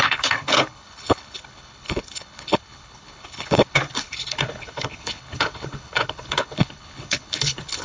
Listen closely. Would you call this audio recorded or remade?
remade